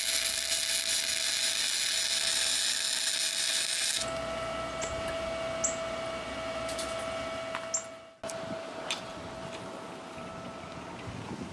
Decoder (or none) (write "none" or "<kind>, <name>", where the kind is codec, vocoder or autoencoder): none